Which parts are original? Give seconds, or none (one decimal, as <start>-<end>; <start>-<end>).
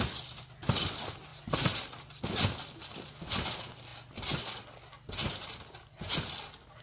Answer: 0.0-6.8